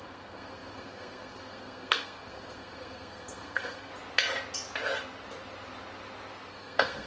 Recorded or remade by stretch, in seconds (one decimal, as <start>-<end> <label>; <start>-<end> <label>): 0.0-3.9 remade; 3.9-6.5 recorded; 6.5-7.1 remade